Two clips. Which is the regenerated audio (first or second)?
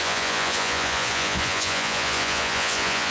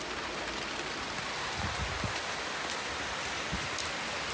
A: first